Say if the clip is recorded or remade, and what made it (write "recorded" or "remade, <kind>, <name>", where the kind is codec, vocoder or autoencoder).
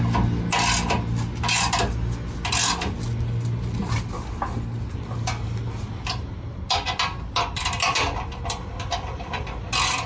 recorded